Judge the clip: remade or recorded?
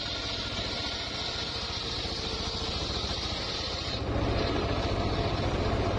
recorded